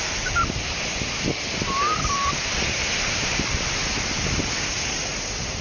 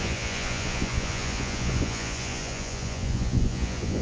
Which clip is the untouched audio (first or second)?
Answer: first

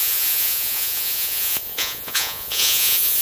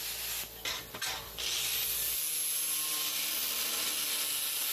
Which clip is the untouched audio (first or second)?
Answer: second